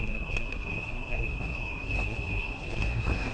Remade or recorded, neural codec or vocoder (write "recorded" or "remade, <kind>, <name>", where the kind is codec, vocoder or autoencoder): remade, codec, SNAC